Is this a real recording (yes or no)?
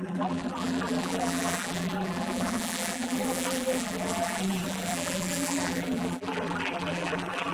no